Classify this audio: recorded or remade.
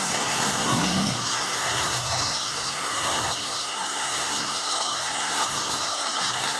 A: remade